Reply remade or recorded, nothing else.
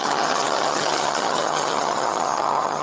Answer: remade